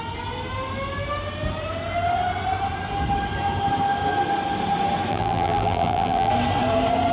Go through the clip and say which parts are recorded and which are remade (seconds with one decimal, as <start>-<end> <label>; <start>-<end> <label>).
0.0-5.1 recorded; 5.1-6.3 remade; 6.3-7.1 recorded